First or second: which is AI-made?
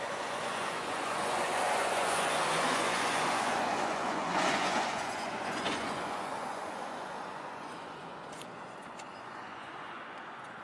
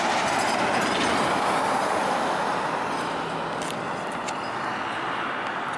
first